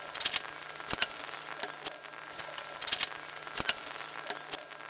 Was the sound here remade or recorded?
recorded